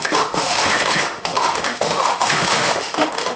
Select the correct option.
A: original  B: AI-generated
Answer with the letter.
B